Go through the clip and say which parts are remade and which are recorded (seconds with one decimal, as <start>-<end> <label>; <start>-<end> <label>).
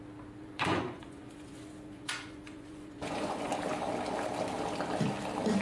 0.0-0.4 recorded; 0.4-3.5 remade; 3.5-5.6 recorded